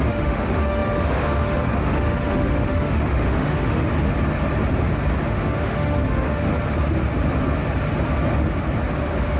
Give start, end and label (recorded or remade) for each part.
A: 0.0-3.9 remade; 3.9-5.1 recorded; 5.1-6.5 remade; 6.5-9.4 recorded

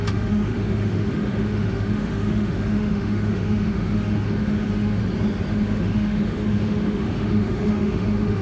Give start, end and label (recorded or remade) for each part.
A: 0.0-5.0 remade; 5.0-5.5 recorded; 5.5-8.4 remade

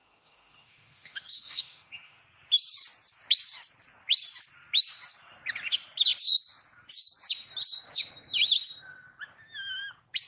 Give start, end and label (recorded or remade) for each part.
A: 0.0-2.2 remade; 2.2-10.3 recorded

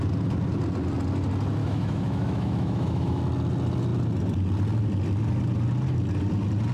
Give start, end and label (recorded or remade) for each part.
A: 0.0-1.6 recorded; 1.6-3.2 remade; 3.2-6.7 recorded

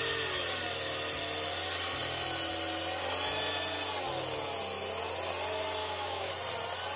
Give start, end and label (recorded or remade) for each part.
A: 0.0-5.8 recorded; 5.8-6.3 remade; 6.3-7.0 recorded

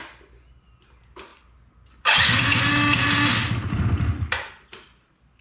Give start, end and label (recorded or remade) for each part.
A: 0.0-5.4 recorded

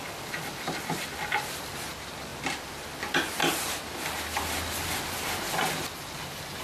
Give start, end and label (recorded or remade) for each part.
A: 0.0-6.6 recorded